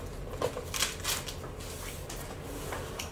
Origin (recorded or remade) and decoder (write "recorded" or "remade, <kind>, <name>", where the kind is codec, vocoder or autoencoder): recorded